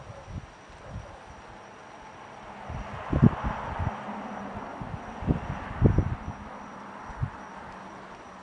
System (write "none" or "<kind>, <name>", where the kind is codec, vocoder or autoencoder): none